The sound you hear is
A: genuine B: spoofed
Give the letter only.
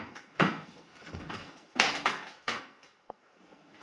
B